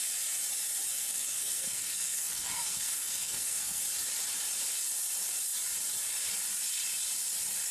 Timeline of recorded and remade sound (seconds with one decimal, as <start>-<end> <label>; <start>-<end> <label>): 0.0-0.9 recorded; 0.9-3.8 remade; 3.8-7.7 recorded